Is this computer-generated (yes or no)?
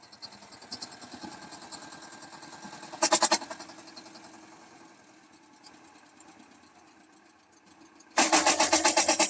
no